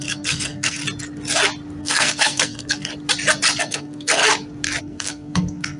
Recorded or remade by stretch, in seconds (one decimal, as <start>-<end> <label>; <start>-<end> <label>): 0.0-0.8 remade; 0.8-1.8 recorded; 1.8-2.9 remade; 2.9-3.6 recorded; 3.6-4.2 remade; 4.2-4.8 recorded; 4.8-5.8 remade